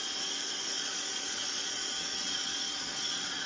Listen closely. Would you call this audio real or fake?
fake